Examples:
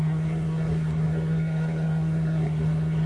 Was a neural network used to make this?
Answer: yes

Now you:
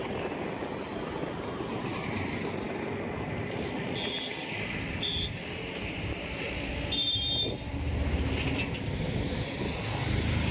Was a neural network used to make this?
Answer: no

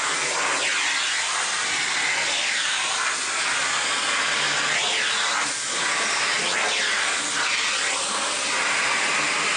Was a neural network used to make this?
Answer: no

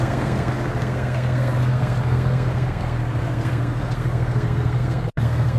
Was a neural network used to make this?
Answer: yes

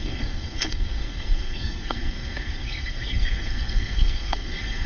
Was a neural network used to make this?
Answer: yes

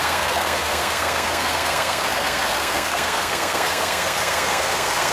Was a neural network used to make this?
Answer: yes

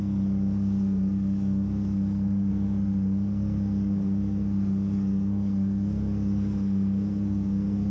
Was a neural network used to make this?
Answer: yes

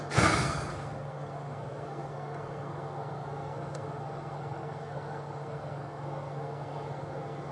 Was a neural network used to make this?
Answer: yes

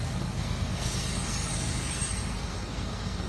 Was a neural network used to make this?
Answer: yes